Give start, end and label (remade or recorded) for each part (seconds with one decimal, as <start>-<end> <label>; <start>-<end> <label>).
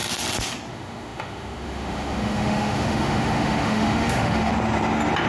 0.0-0.7 recorded; 0.7-4.5 remade; 4.5-5.3 recorded